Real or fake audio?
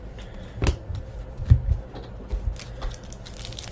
real